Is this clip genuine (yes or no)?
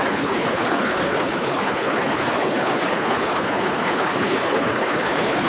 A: no